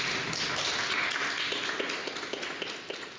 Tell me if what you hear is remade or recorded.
recorded